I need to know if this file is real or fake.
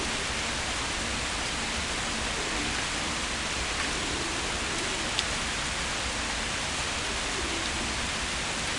real